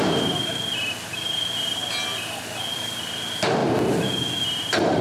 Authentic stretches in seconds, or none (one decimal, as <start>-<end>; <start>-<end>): 0.0-5.0

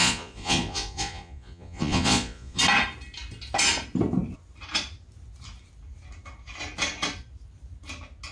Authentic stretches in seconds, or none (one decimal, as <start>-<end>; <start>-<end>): 2.6-8.3

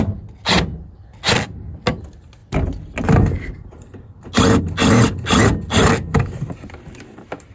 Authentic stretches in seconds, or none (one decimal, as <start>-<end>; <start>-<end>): 0.0-7.5

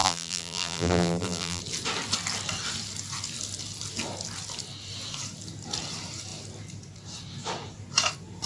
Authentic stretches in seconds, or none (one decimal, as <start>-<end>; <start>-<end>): 1.6-8.5

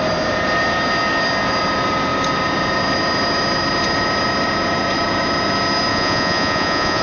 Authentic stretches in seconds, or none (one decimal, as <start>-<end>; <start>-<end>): 0.0-5.9